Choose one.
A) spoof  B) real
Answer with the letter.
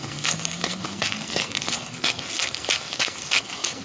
A